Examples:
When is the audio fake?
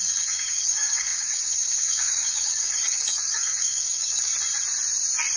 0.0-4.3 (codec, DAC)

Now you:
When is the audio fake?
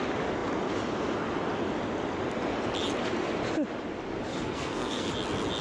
4.3-5.1 (codec, SNAC)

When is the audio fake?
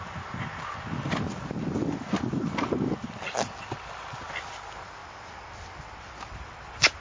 none